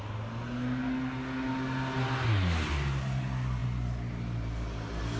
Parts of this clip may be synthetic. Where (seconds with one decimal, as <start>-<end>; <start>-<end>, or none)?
none